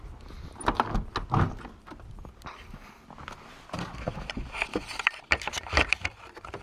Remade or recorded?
recorded